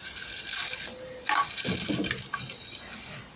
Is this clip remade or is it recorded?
recorded